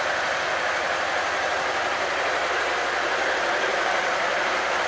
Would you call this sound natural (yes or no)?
yes